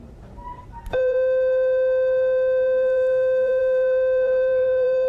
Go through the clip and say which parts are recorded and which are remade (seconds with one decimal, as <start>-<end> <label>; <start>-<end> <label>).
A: 0.0-5.1 remade